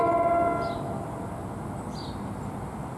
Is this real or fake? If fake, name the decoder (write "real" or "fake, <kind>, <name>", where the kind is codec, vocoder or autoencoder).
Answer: real